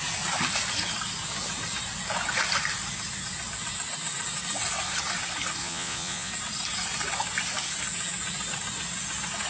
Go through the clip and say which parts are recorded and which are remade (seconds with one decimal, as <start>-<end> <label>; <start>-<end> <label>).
0.0-5.6 recorded; 5.6-6.3 remade; 6.3-9.5 recorded

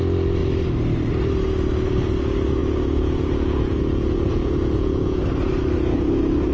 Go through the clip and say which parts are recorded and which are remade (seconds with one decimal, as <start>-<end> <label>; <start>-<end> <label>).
0.0-2.6 recorded; 2.6-5.2 remade; 5.2-6.5 recorded

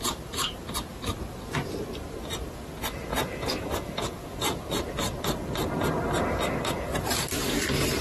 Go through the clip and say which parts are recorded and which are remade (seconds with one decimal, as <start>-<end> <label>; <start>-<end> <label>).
0.0-3.1 recorded; 3.1-4.6 remade; 4.6-8.0 recorded

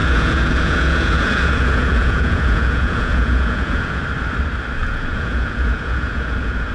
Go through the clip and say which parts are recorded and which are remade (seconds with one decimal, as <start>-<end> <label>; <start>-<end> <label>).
0.0-4.0 remade; 4.0-4.8 recorded; 4.8-6.7 remade

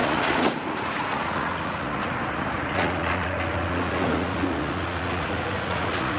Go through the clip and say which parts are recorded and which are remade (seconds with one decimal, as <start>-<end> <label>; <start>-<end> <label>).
0.0-6.2 remade

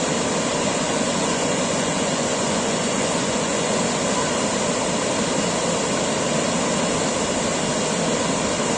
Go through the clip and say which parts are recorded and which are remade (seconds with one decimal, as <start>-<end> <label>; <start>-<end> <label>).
0.0-0.5 recorded; 0.5-3.8 remade; 3.8-8.8 recorded

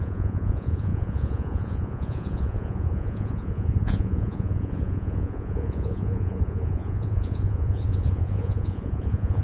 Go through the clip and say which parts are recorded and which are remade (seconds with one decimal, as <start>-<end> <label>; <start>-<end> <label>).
0.0-9.4 remade